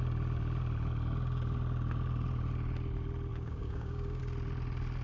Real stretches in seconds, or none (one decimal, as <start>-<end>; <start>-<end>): 0.0-3.3; 4.2-5.0